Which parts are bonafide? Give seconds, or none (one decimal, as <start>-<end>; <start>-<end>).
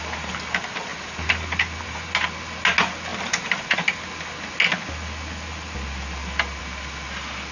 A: 0.0-0.9; 2.1-3.1; 3.9-7.5